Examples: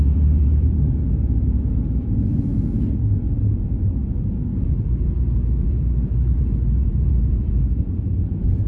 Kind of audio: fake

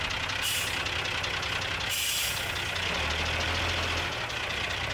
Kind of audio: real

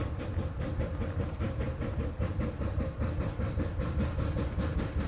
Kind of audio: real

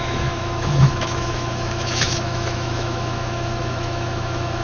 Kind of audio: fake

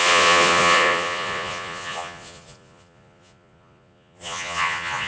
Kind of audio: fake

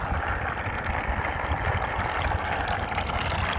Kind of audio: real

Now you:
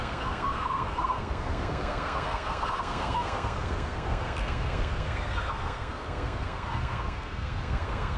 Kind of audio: fake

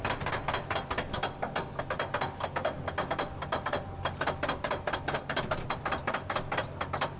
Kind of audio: real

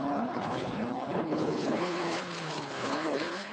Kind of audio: fake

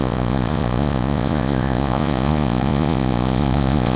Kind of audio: fake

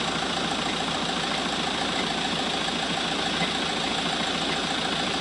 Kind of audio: real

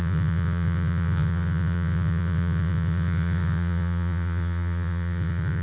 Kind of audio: fake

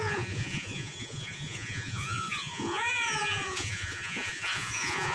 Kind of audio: fake